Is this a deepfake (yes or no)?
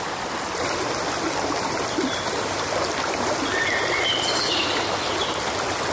no